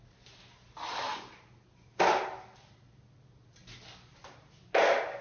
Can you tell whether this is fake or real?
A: real